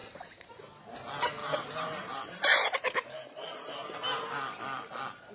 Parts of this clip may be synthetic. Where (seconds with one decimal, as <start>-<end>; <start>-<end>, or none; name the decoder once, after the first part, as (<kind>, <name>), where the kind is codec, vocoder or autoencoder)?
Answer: 0.0-0.5 (vocoder, BigVGAN v2); 1.4-4.3